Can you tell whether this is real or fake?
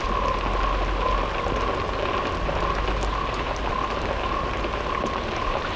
real